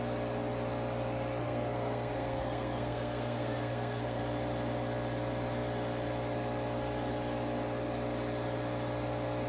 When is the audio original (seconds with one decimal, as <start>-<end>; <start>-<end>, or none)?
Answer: 0.0-1.4; 4.2-9.5

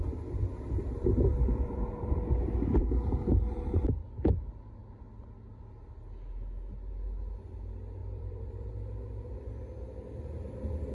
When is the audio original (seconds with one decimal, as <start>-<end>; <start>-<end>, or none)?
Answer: 0.0-1.3; 2.7-8.0; 8.7-10.9

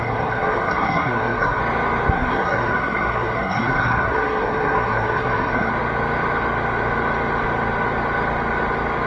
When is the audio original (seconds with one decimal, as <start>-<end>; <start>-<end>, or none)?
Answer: 1.6-2.1; 5.7-9.1

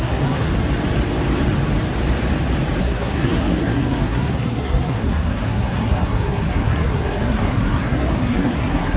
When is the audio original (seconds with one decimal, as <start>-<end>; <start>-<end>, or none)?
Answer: 0.5-2.8

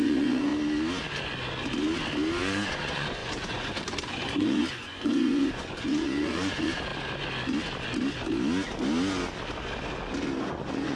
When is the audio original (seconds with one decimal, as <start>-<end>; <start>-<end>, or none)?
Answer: 0.5-2.4; 6.9-10.4

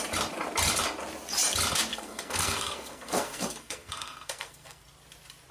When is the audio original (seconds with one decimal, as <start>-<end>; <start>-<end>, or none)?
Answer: 0.0-1.9; 4.8-5.5